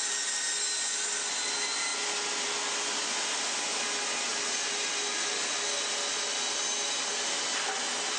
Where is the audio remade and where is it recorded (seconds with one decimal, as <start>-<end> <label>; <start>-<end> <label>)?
0.0-8.2 recorded